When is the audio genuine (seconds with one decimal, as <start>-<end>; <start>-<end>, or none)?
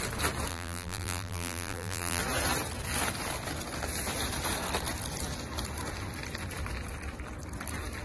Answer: 0.0-0.5; 2.2-8.0